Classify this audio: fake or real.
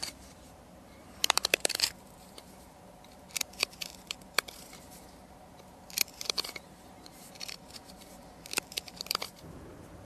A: fake